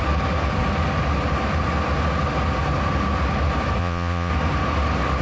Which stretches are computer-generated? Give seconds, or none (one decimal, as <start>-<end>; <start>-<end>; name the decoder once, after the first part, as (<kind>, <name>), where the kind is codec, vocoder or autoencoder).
3.8-4.3 (vocoder, Vocos)